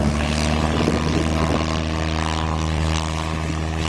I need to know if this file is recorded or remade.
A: recorded